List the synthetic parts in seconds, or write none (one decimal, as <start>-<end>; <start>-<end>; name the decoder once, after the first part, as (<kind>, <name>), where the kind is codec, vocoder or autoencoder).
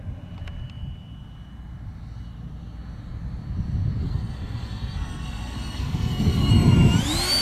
4.0-6.5 (codec, SNAC)